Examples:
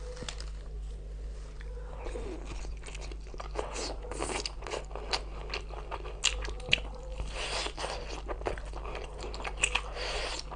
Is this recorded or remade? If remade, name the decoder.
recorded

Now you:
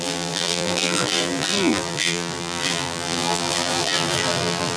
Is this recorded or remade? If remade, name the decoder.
remade, vocoder, BigVGAN v2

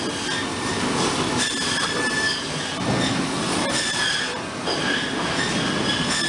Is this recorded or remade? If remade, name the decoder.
recorded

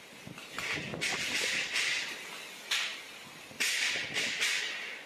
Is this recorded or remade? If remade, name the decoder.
recorded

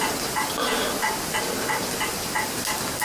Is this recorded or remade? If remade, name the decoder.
recorded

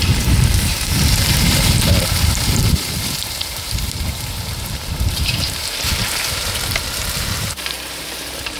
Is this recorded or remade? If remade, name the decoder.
remade, vocoder, BigVGAN v2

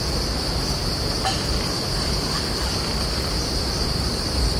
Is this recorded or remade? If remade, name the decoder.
remade, vocoder, BigVGAN v2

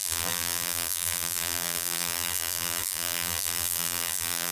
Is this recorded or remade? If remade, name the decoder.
remade, vocoder, BigVGAN v2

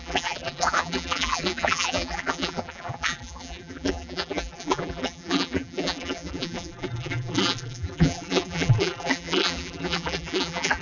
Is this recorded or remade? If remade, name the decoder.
remade, vocoder, BigVGAN v2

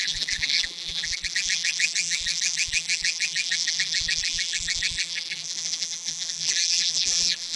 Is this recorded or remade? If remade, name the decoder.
remade, vocoder, BigVGAN v2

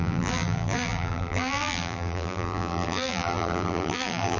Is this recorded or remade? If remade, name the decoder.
remade, vocoder, BigVGAN v2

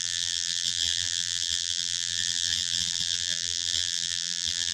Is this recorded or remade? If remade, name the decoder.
remade, vocoder, BigVGAN v2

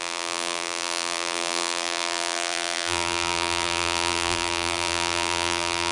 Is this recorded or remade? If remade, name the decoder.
remade, vocoder, BigVGAN v2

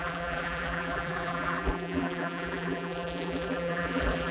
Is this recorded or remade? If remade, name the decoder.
remade, vocoder, BigVGAN v2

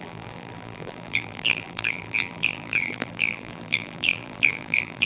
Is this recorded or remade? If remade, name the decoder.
remade, vocoder, BigVGAN v2